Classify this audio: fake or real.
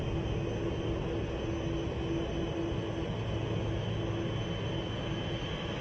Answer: real